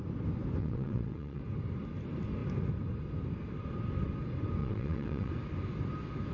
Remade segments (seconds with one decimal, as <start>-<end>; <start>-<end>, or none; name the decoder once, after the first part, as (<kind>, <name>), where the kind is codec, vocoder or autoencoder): 0.6-1.4 (vocoder, WaveNeXt); 4.6-5.3